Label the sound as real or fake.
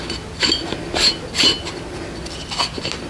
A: real